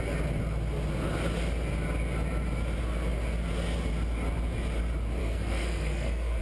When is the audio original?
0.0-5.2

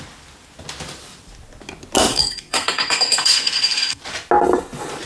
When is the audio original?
0.0-2.1; 4.0-5.1

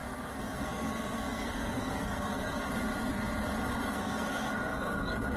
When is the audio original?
2.6-3.8

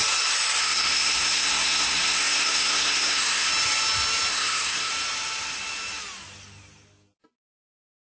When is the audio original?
0.0-0.6; 3.5-4.3; 4.9-8.1

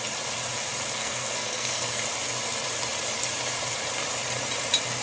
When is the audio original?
0.0-1.0; 2.0-5.0

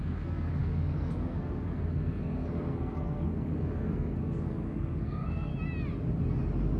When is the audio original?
5.5-6.8

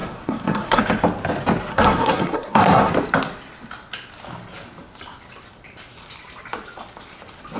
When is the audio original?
0.8-1.7; 2.9-7.6

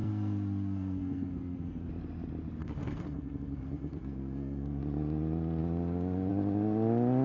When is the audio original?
1.9-2.6; 4.8-7.2